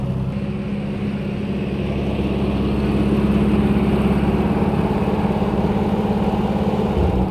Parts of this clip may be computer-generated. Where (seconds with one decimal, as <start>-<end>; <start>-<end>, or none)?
none